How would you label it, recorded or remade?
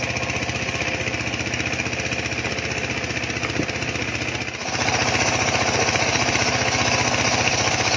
recorded